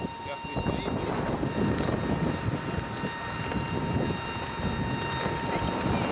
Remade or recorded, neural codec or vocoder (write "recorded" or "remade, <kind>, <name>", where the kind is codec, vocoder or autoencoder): recorded